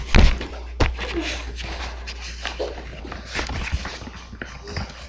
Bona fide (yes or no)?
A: yes